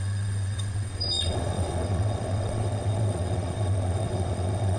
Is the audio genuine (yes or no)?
no